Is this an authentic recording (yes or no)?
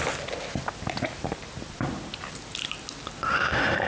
yes